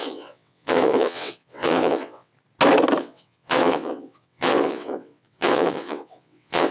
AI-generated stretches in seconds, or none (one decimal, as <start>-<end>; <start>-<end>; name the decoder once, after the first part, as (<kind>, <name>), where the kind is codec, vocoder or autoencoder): 0.0-2.3 (vocoder, WaveNeXt); 3.0-6.7